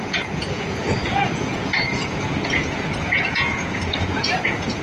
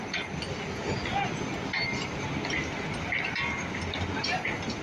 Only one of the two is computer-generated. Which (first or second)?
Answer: first